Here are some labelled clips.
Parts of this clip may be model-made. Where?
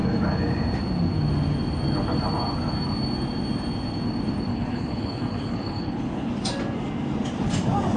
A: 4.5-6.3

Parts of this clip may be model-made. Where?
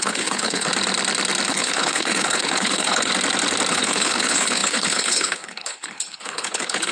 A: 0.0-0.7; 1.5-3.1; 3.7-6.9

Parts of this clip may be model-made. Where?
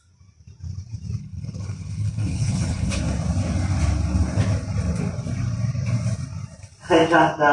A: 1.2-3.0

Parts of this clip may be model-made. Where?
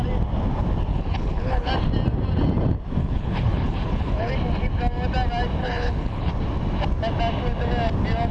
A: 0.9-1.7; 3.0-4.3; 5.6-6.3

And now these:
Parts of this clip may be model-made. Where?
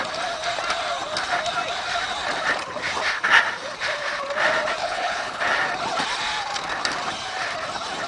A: 4.8-5.4